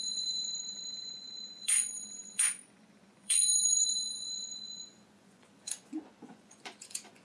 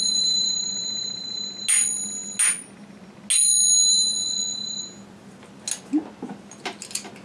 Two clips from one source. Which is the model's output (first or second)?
first